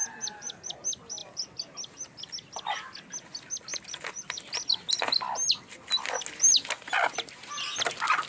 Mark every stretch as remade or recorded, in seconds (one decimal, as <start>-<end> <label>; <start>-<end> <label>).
0.0-8.3 recorded